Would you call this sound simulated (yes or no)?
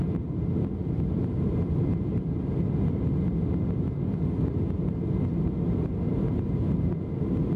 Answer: no